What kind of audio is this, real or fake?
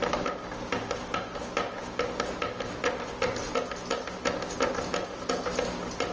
real